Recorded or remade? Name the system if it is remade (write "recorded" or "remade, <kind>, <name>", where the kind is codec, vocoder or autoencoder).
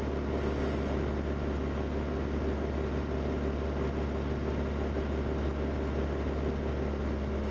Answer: recorded